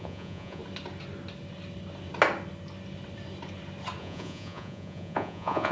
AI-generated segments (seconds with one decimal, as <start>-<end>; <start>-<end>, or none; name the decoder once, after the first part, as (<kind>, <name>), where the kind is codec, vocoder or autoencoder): 0.0-0.6 (vocoder, Vocos); 4.0-5.7